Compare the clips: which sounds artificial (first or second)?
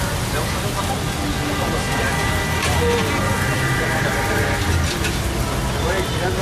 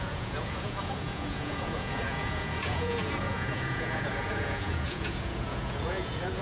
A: second